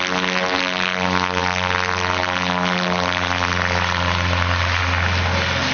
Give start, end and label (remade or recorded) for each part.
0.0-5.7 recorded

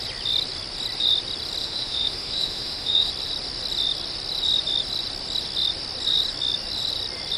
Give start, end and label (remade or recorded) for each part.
0.0-1.6 recorded; 1.6-3.1 remade; 3.1-7.4 recorded